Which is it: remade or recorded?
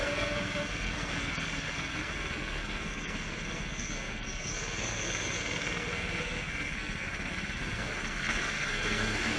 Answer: remade